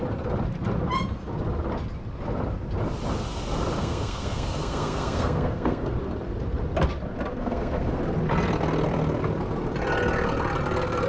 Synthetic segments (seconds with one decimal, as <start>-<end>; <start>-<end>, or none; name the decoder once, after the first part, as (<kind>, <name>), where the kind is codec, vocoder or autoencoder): 3.8-5.9 (codec, SNAC); 7.3-8.0